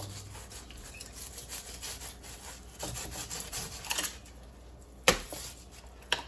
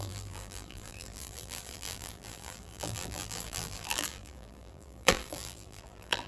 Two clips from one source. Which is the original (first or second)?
first